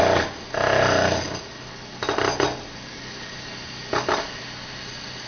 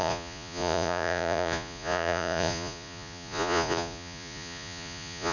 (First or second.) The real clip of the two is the first